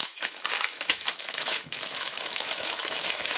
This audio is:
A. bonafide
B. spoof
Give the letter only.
B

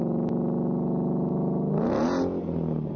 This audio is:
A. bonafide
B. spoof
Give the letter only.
A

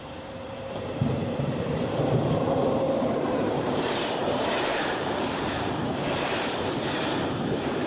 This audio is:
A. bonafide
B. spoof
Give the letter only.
B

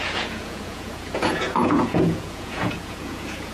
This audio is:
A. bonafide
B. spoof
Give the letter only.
B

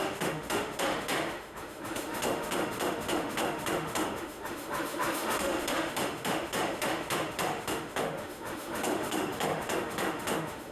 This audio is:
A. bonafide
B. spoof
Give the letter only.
B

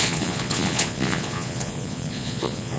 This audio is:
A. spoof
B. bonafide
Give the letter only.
A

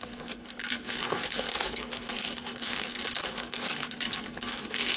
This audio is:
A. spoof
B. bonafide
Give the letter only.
A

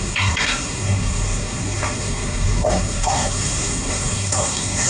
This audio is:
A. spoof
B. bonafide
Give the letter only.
A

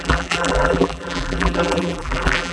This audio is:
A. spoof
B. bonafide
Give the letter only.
A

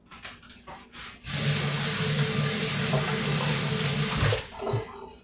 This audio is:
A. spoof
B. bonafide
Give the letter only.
B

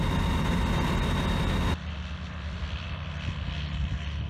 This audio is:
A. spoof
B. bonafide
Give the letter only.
B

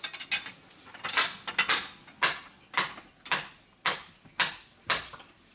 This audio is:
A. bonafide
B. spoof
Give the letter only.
A